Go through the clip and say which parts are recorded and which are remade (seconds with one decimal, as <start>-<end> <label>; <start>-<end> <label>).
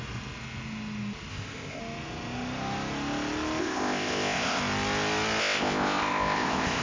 0.0-1.3 recorded; 1.3-1.8 remade; 1.8-3.6 recorded; 3.6-4.6 remade; 4.6-5.4 recorded; 5.4-6.8 remade